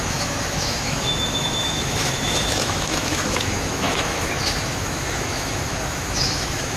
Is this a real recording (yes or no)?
no